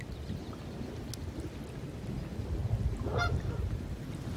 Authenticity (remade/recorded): recorded